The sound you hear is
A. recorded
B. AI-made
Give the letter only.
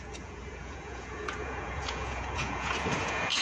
B